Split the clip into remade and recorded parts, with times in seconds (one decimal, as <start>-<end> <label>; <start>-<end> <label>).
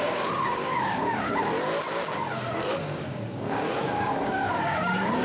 0.0-1.4 remade; 1.4-2.8 recorded; 2.8-5.2 remade